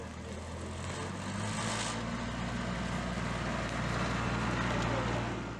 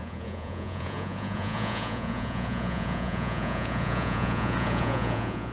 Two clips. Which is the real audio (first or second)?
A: first